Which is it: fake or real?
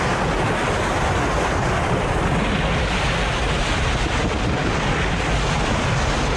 real